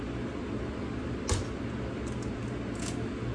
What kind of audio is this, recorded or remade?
recorded